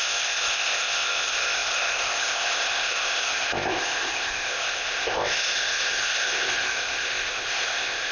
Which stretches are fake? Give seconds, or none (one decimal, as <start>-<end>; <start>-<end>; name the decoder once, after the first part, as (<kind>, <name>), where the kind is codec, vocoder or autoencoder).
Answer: 0.0-8.1 (codec, ZipCodec)